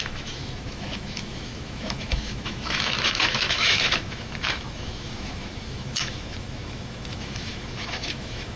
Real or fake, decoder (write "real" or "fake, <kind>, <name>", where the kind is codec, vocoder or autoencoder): fake, autoencoder, DAC-VAE